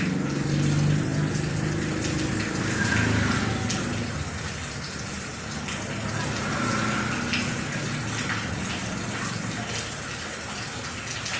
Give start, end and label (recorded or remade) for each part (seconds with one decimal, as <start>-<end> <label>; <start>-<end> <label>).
0.0-11.4 recorded